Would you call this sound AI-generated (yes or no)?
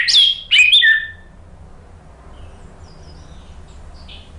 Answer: no